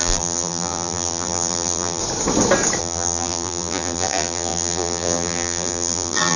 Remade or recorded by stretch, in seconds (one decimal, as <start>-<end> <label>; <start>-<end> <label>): 0.0-2.0 remade; 2.0-2.8 recorded; 2.8-6.4 remade